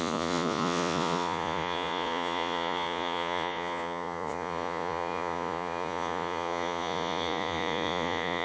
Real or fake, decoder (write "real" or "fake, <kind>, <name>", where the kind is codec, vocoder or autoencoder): fake, vocoder, Vocos